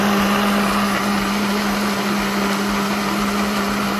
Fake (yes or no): no